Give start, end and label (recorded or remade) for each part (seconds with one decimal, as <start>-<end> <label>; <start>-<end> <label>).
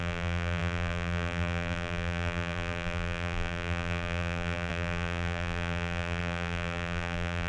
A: 0.0-7.5 remade